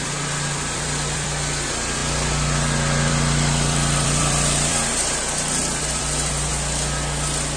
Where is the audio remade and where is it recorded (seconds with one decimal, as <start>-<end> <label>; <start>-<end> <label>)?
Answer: 0.0-2.0 remade; 2.0-3.1 recorded; 3.1-6.5 remade; 6.5-7.6 recorded